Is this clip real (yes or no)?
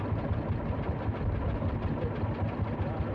yes